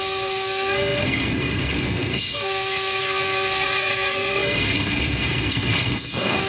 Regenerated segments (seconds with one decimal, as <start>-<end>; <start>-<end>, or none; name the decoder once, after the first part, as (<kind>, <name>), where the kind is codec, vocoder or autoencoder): 0.0-6.5 (codec, SNAC)